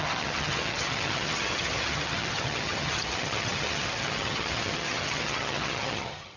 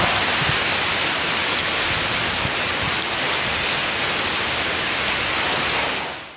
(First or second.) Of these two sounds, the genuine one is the second